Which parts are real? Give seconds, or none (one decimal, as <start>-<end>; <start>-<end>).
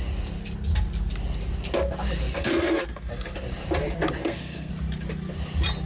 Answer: 0.0-2.4; 3.1-4.2; 4.7-5.9